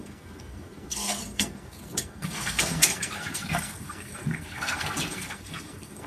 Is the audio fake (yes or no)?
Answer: yes